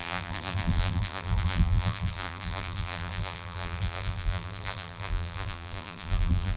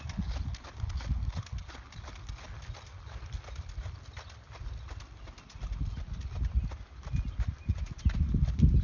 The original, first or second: second